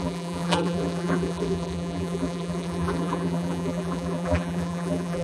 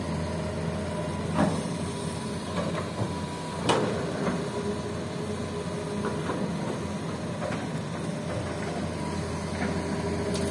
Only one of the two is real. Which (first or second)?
second